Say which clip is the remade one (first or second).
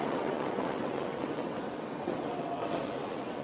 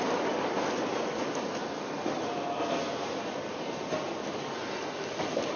first